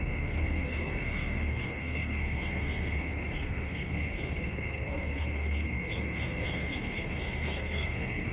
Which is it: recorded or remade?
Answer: remade